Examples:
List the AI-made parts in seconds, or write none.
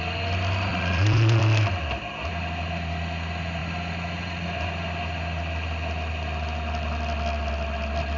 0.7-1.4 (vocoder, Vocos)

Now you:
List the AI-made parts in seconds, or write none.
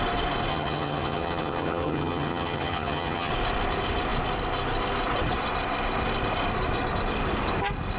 0.5-3.3 (vocoder, HiFi-GAN)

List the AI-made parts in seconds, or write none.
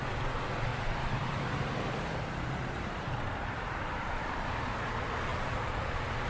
0.7-4.5 (vocoder, BigVGAN v2); 5.3-6.3